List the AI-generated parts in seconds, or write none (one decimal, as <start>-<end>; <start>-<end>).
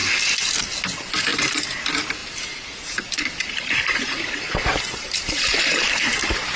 1.3-1.8; 2.2-6.6